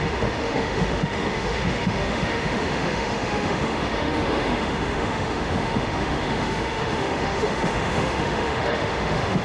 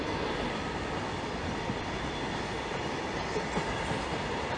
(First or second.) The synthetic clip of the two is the first